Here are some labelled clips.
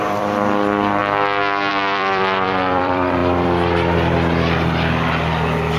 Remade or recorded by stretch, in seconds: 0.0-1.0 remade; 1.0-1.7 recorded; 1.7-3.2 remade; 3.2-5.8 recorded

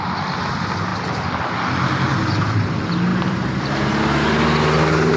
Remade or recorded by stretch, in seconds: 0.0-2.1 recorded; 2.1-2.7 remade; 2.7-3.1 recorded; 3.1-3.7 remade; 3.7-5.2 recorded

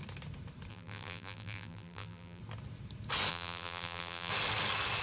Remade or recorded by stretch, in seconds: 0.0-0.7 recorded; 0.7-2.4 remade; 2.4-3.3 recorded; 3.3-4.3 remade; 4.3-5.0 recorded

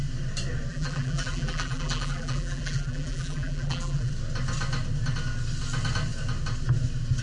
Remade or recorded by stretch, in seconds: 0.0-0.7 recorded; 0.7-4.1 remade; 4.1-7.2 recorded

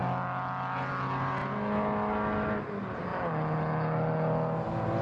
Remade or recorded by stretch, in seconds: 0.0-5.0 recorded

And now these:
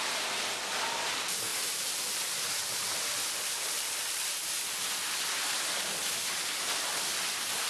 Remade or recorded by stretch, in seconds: 0.0-1.5 recorded; 1.5-6.1 remade; 6.1-7.7 recorded

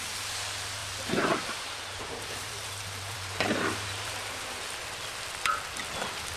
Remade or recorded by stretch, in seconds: 0.0-0.8 recorded; 0.8-4.6 remade; 4.6-6.4 recorded